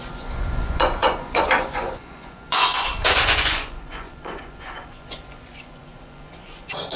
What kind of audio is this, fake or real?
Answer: fake